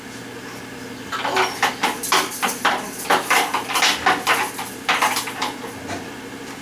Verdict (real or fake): real